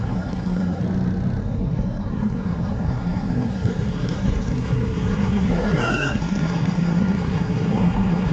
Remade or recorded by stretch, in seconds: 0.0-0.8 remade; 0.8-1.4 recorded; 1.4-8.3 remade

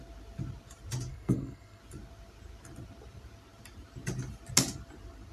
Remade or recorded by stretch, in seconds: 0.0-1.1 recorded; 1.1-1.8 remade; 1.8-5.3 recorded

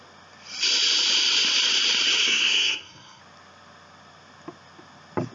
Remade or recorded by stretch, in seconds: 0.0-2.2 recorded; 2.2-3.2 remade; 3.2-5.3 recorded

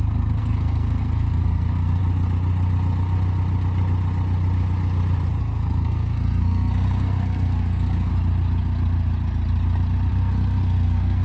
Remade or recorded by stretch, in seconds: 0.0-2.0 remade; 2.0-5.4 recorded; 5.4-8.1 remade; 8.1-10.1 recorded; 10.1-11.2 remade